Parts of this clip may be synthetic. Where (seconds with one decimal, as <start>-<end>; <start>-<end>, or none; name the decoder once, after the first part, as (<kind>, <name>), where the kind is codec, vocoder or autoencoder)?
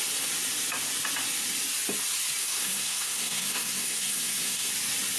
2.4-4.7 (codec, SNAC)